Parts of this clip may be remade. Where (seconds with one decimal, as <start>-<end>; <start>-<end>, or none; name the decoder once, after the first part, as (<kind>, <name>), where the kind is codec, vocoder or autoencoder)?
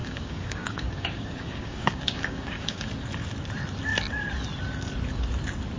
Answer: 0.0-2.9 (codec, DAC)